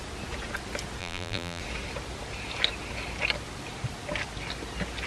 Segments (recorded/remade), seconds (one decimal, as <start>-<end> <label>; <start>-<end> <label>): 0.0-1.0 recorded; 1.0-1.6 remade; 1.6-5.1 recorded